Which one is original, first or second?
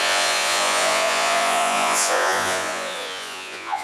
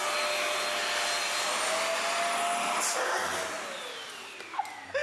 second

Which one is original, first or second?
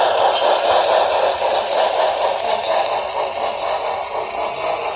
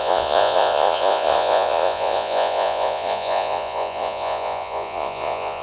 first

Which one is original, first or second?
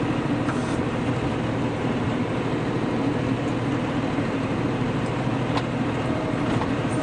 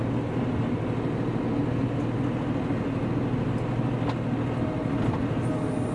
second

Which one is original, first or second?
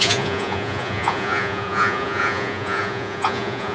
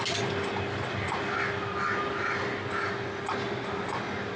second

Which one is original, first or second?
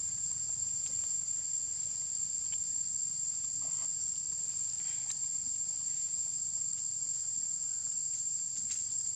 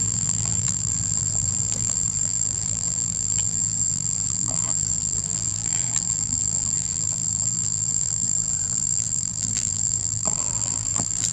first